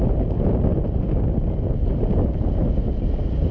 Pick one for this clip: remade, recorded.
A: recorded